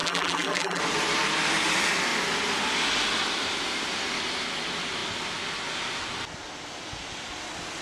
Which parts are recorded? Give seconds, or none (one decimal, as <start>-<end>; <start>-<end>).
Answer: 0.8-7.8